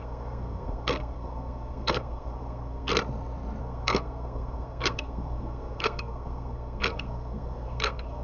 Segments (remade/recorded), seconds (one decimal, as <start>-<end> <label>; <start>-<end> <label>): 0.0-2.9 remade; 2.9-3.6 recorded; 3.6-8.2 remade